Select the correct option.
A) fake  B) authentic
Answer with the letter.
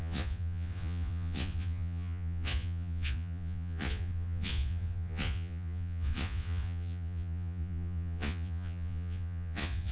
A